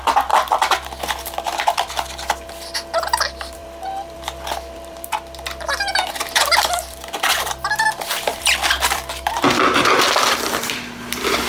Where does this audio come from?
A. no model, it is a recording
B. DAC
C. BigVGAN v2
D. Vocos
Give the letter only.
C